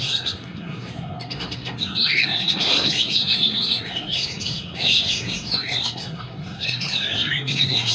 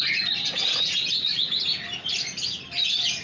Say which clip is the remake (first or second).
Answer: first